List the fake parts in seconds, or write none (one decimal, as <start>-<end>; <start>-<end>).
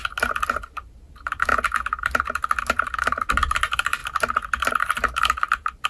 0.7-1.5; 2.6-4.0; 4.7-5.9